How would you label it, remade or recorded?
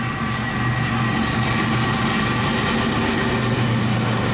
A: recorded